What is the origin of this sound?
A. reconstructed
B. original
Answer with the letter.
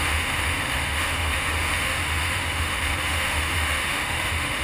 A